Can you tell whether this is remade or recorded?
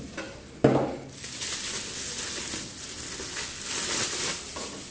recorded